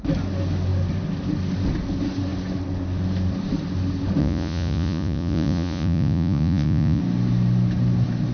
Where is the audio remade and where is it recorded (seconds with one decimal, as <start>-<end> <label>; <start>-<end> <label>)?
0.0-4.2 recorded; 4.2-7.0 remade; 7.0-8.3 recorded